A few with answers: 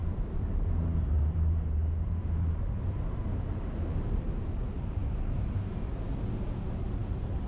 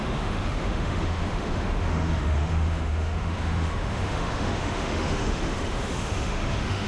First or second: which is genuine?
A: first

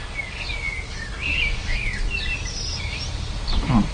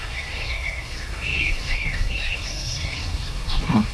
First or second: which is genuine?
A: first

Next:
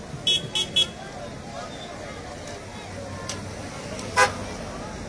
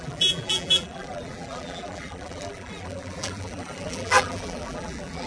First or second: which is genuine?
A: first